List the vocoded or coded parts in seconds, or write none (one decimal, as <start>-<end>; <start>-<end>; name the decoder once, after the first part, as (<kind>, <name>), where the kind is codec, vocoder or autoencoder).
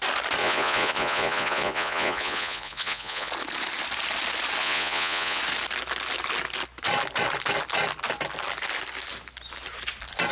0.4-3.3 (vocoder, Vocos); 4.6-5.4